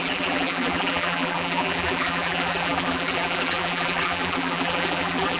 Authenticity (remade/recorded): remade